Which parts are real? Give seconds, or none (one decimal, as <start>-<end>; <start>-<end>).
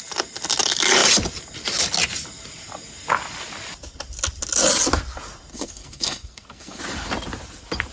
0.0-5.5; 6.8-7.9